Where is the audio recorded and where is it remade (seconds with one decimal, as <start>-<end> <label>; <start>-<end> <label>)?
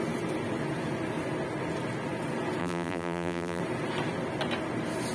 0.0-2.6 recorded; 2.6-3.6 remade; 3.6-5.1 recorded